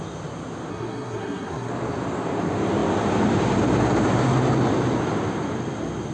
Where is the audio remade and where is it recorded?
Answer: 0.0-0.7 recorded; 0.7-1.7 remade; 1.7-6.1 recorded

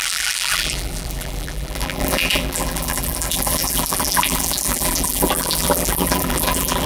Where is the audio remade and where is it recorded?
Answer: 0.0-6.9 remade